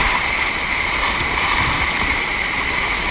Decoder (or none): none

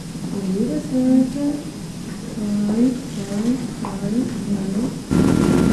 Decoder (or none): none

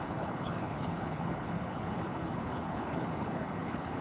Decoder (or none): codec, HILCodec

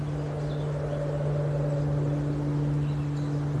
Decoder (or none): none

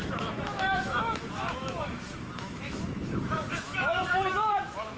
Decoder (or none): autoencoder, DAC-VAE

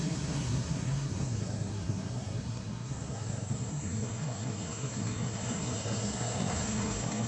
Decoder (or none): codec, SNAC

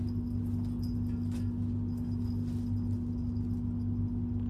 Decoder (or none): none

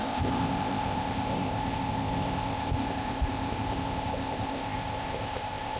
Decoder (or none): codec, ZipCodec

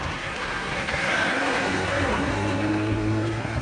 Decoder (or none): codec, SNAC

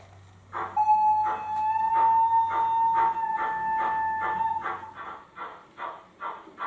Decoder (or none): none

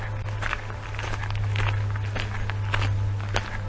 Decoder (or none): none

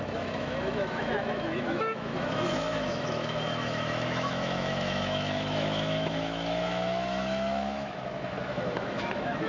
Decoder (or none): autoencoder, DAC-VAE